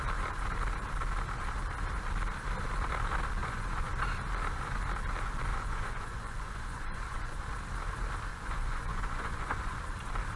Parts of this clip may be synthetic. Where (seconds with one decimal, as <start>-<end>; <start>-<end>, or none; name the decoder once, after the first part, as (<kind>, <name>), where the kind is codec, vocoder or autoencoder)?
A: 3.4-3.9 (vocoder, Vocos); 5.5-7.5; 8.3-9.8